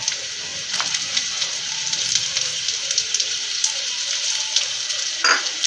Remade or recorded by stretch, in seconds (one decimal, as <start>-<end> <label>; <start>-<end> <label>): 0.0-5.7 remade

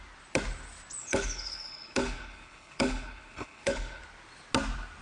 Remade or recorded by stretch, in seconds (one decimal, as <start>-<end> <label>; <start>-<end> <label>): 0.0-1.0 recorded; 1.0-4.0 remade; 4.0-5.0 recorded

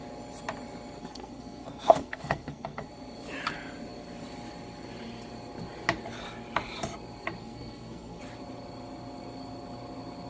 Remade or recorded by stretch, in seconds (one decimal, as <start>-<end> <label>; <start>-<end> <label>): 0.0-1.0 recorded; 1.0-2.9 remade; 2.9-7.4 recorded; 7.4-8.2 remade; 8.2-10.3 recorded